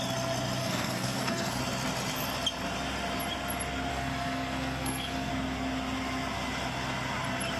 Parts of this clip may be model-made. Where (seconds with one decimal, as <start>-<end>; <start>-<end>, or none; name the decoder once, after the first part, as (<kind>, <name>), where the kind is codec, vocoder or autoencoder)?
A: 0.6-1.6 (codec, SNAC); 3.9-5.3